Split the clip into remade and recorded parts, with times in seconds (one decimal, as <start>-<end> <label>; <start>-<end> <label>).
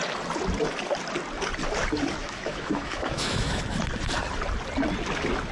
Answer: 0.0-2.2 recorded; 2.2-3.6 remade; 3.6-5.5 recorded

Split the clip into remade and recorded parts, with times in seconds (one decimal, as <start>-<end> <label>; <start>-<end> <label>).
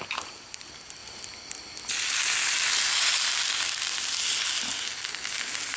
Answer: 0.0-5.8 recorded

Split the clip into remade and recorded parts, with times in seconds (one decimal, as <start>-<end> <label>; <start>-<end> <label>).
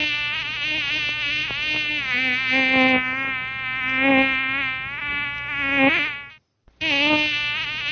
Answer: 0.0-7.9 recorded